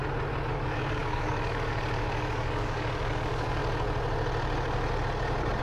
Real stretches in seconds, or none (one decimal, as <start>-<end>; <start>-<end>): 0.0-0.5; 3.6-5.6